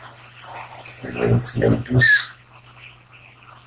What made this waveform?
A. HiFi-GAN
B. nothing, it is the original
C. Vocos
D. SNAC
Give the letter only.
B